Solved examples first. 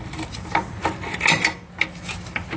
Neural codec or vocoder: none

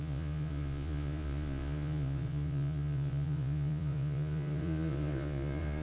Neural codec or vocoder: vocoder, Vocos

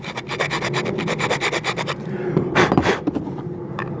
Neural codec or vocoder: none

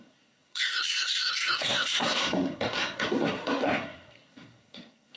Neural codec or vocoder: codec, SNAC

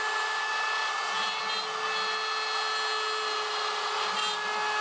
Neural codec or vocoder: none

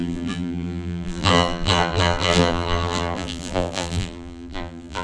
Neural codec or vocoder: vocoder, BigVGAN v2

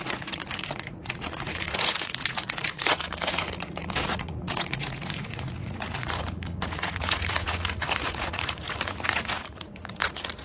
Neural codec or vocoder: vocoder, Vocos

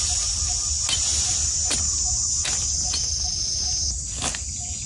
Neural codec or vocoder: none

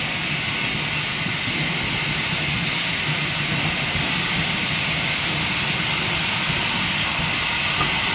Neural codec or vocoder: none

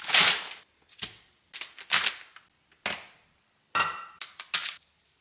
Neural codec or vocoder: none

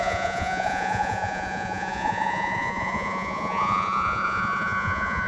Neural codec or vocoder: vocoder, Vocos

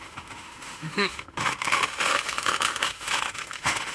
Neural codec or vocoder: autoencoder, DAC-VAE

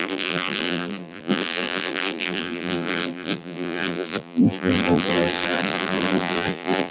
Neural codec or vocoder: vocoder, BigVGAN v2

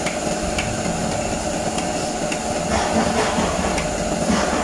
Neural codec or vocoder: none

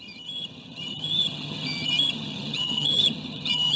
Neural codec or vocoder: vocoder, HiFi-GAN